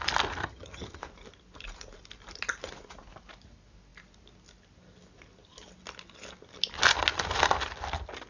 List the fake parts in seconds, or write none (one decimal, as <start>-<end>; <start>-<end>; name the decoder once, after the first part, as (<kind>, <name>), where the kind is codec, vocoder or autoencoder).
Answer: 0.4-1.0 (vocoder, HiFi-GAN)